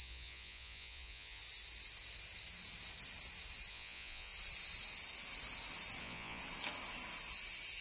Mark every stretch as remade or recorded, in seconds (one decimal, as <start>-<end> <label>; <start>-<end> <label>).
0.0-1.4 remade; 1.4-3.7 recorded; 3.7-4.3 remade; 4.3-6.0 recorded; 6.0-6.4 remade; 6.4-7.8 recorded